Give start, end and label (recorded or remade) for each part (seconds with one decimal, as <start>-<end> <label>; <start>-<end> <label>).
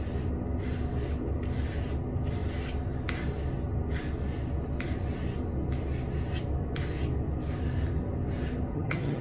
0.0-8.7 recorded; 8.7-9.2 remade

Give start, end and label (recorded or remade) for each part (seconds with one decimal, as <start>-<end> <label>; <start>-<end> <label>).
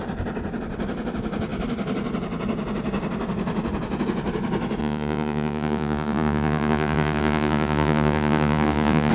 0.0-4.8 recorded; 4.8-9.1 remade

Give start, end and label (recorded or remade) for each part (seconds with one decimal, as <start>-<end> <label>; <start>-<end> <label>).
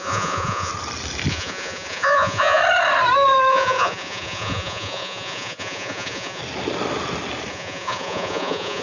0.0-0.7 remade; 0.7-1.3 recorded; 1.3-2.6 remade; 2.6-3.5 recorded; 3.5-6.4 remade; 6.4-7.5 recorded; 7.5-8.8 remade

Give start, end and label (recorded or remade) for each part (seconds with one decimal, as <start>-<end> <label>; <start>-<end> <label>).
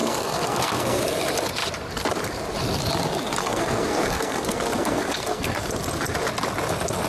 0.0-1.0 remade; 1.0-3.4 recorded; 3.4-5.7 remade; 5.7-7.1 recorded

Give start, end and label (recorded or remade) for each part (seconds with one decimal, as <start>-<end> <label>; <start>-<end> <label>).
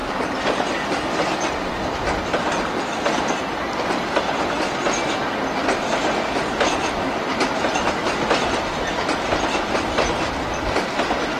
0.0-0.7 remade; 0.7-11.4 recorded